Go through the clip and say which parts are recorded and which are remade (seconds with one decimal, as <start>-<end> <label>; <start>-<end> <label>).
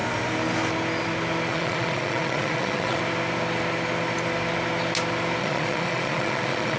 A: 0.0-1.5 recorded; 1.5-3.0 remade; 3.0-5.4 recorded; 5.4-6.8 remade